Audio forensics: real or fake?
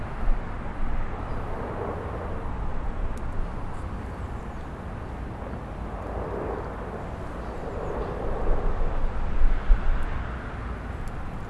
real